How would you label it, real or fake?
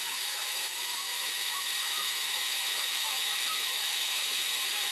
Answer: fake